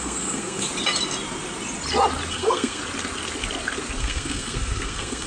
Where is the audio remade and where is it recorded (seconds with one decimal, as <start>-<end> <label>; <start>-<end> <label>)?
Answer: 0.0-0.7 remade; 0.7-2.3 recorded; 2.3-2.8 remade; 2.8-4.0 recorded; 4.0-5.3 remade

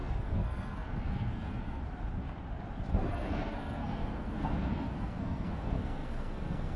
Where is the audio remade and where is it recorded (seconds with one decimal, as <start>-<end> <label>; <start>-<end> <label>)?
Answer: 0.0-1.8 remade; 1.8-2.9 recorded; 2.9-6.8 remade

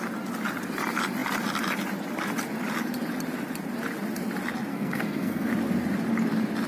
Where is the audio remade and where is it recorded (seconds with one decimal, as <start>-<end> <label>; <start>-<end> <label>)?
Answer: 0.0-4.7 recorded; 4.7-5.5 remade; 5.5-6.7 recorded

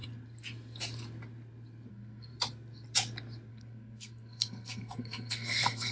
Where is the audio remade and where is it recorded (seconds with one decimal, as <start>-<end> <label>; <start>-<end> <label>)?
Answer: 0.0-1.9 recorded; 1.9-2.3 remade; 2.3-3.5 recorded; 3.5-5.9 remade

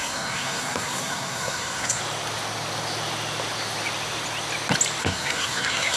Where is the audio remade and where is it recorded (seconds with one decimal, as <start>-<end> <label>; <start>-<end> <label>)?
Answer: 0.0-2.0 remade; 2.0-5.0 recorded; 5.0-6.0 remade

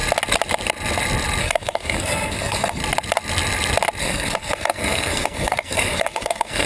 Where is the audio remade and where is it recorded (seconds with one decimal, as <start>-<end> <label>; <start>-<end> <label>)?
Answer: 0.0-1.4 recorded; 1.4-2.8 remade; 2.8-4.0 recorded; 4.0-6.7 remade

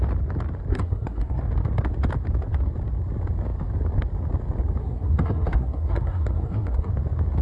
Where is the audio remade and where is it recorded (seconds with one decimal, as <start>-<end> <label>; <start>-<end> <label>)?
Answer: 0.0-0.7 recorded; 0.7-1.4 remade; 1.4-4.8 recorded; 4.8-6.9 remade; 6.9-7.4 recorded

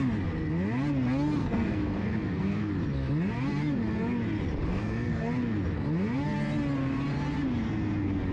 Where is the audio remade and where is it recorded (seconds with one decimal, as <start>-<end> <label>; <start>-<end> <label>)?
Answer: 0.0-1.4 recorded; 1.4-2.7 remade; 2.7-4.7 recorded; 4.7-5.3 remade; 5.3-8.3 recorded